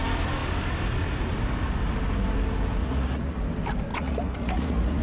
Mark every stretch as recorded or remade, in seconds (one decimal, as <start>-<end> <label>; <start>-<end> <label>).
0.0-2.8 recorded; 2.8-3.4 remade; 3.4-3.9 recorded; 3.9-5.0 remade